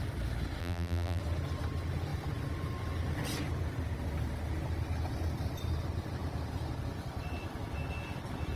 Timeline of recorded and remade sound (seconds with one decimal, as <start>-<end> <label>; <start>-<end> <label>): 0.0-0.6 recorded; 0.6-1.2 remade; 1.2-8.6 recorded